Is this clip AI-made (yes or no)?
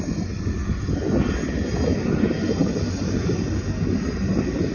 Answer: no